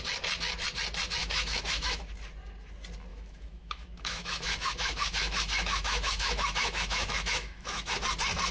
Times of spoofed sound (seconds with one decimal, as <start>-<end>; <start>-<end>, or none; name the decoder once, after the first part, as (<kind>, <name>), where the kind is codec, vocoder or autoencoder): 1.2-2.0 (autoencoder, DAC-VAE); 3.1-7.9